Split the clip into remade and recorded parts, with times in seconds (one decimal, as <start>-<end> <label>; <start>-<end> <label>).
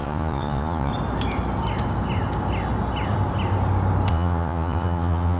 0.0-0.9 remade; 0.9-4.1 recorded; 4.1-5.4 remade